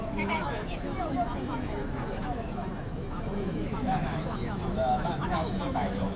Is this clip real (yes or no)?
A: no